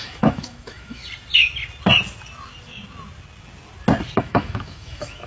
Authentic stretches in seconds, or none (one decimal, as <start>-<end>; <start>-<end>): 1.0-4.2